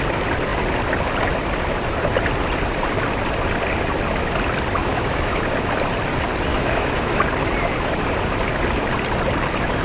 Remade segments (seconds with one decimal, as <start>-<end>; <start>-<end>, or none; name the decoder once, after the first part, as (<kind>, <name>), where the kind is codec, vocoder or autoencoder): 4.8-5.4 (autoencoder, DAC-VAE); 6.5-7.2